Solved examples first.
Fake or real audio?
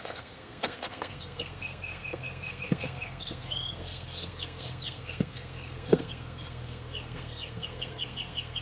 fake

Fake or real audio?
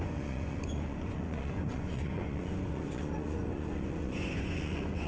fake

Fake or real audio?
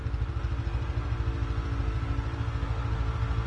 real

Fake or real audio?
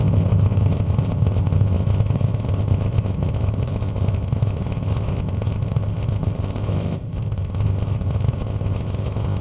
fake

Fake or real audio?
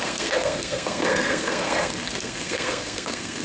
fake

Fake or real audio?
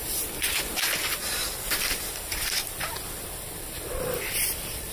fake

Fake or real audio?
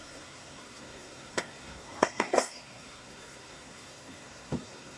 fake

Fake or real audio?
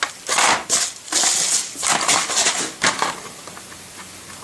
real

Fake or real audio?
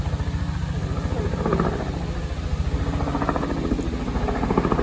real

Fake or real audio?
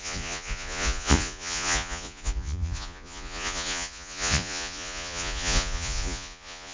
fake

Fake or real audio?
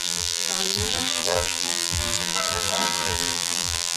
fake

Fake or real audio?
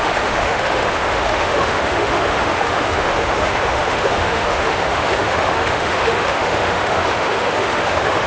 fake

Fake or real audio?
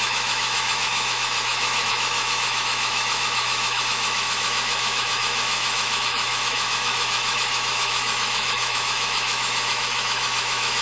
fake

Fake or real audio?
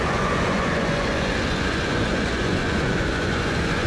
fake